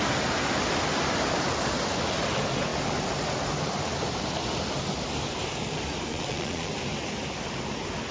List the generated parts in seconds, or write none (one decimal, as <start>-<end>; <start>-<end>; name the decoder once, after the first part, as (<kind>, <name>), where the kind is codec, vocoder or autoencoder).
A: 6.1-6.7 (vocoder, Vocos)